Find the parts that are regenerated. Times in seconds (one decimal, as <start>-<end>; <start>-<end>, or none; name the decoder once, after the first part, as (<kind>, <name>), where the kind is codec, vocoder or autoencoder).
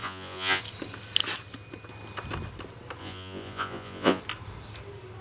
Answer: 0.0-0.6 (vocoder, Vocos); 3.0-4.2